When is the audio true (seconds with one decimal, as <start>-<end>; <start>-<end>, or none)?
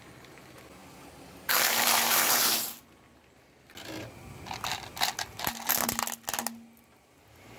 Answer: 0.0-0.8; 2.8-7.6